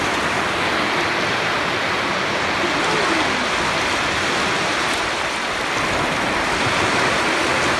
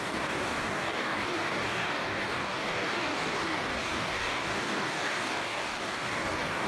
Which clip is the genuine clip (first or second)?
first